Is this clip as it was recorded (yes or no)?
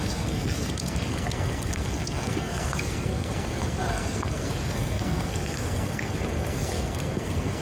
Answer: no